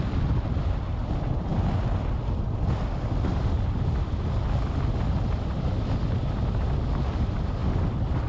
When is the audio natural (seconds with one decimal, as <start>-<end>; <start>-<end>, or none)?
0.0-8.3